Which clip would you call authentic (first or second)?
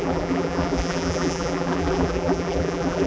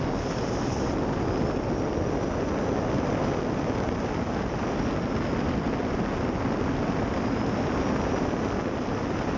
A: second